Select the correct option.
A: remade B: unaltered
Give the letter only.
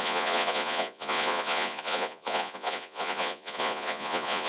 A